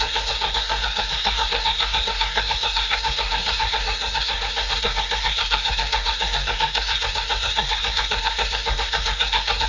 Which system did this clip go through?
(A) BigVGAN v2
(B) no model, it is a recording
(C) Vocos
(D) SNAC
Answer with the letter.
D